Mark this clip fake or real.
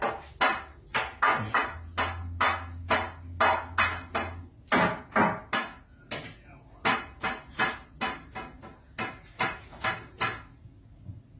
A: real